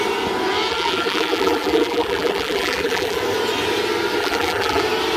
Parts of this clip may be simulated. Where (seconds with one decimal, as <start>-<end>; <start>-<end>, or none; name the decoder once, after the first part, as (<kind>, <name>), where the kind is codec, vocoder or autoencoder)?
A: 0.7-3.2 (vocoder, BigVGAN v2); 4.2-4.8